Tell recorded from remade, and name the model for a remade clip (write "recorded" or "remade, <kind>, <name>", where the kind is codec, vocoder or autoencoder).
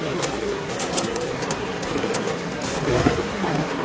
remade, codec, SNAC